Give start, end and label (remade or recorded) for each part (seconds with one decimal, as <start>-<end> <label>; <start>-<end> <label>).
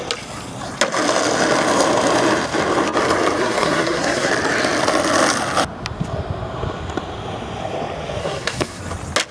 0.0-3.4 recorded; 3.4-4.3 remade; 4.3-8.2 recorded; 8.2-8.8 remade; 8.8-9.3 recorded